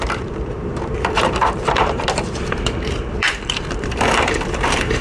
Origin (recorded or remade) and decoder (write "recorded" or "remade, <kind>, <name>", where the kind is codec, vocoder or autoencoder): remade, vocoder, BigVGAN v2